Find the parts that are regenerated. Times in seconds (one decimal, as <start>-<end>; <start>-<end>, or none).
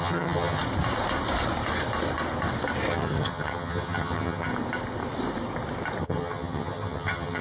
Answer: 0.0-0.6; 2.9-4.5; 6.0-7.4